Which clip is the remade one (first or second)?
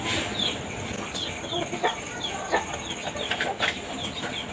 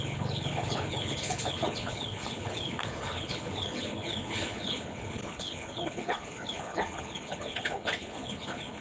second